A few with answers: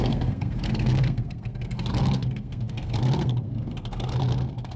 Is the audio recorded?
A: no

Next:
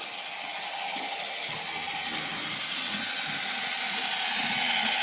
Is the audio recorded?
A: yes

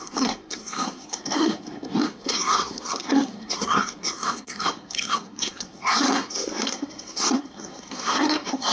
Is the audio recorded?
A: no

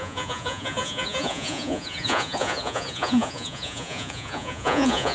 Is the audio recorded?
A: no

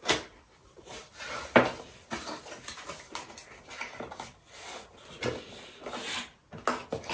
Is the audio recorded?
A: yes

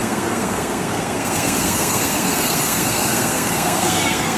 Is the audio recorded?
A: no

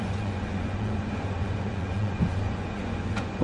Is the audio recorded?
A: no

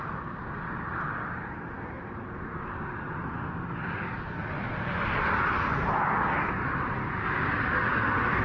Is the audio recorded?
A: yes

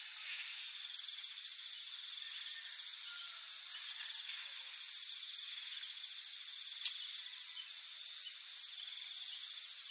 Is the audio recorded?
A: yes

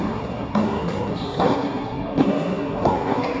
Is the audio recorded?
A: no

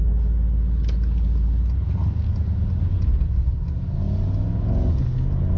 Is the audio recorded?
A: yes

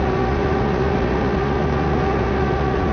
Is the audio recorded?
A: no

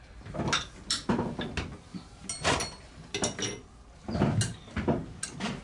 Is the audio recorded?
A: yes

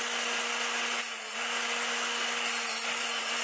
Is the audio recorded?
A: yes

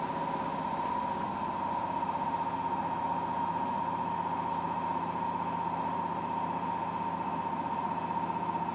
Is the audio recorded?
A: yes